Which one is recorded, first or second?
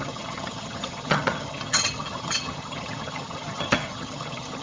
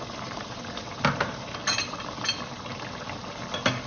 second